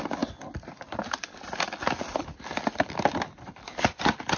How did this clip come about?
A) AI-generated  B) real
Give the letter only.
B